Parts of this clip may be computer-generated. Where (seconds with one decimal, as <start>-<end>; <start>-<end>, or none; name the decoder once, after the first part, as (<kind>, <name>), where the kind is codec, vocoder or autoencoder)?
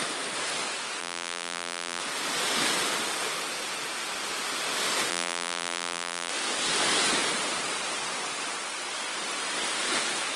1.0-2.0 (vocoder, BigVGAN v2); 5.1-6.3